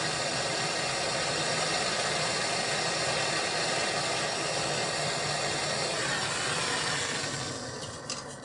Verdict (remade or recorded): recorded